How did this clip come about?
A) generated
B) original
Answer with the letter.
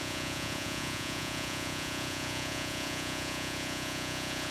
A